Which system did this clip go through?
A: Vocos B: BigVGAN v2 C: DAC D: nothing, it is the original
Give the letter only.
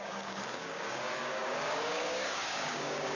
C